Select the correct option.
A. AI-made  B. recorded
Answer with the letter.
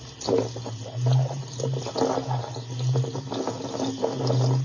B